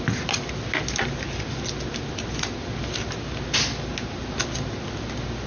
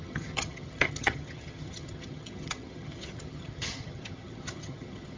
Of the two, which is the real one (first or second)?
first